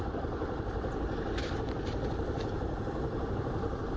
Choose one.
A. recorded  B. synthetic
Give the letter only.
B